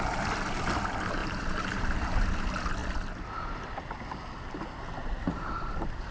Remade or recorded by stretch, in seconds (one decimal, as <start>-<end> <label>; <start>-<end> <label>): 0.0-1.2 recorded; 1.2-2.2 remade; 2.2-5.0 recorded; 5.0-6.1 remade